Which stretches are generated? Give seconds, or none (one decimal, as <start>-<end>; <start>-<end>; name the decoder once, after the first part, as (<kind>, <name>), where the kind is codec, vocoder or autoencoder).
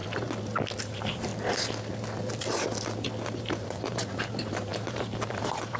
0.8-1.3 (vocoder, BigVGAN v2); 3.4-5.8